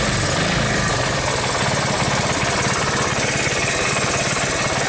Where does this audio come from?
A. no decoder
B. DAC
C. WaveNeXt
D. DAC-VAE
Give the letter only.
A